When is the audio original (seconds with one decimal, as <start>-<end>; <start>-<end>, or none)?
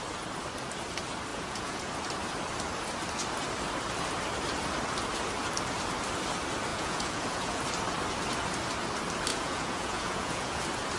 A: 0.0-1.3; 1.9-6.7; 7.6-9.3; 10.6-11.0